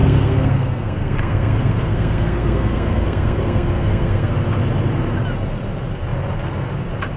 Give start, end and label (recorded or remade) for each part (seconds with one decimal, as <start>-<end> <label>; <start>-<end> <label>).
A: 0.0-4.3 remade; 4.3-7.2 recorded